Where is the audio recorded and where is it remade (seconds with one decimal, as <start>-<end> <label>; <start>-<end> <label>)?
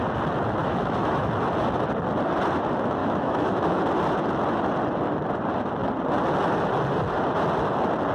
0.0-0.6 recorded; 0.6-1.3 remade; 1.3-3.0 recorded; 3.0-3.8 remade; 3.8-8.1 recorded